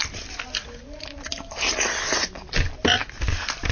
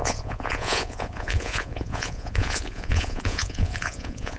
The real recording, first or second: first